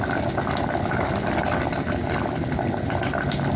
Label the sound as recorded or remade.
recorded